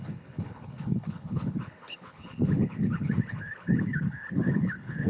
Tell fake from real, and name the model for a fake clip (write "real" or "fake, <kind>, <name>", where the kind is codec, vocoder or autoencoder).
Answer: fake, codec, HILCodec